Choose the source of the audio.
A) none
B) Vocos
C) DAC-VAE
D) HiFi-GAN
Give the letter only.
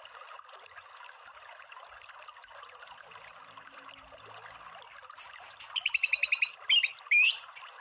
A